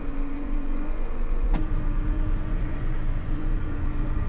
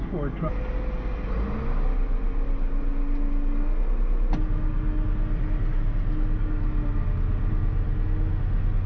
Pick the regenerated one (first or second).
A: first